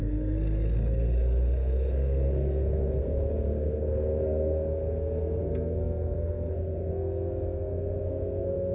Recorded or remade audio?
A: remade